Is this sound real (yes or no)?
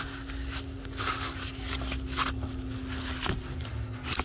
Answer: yes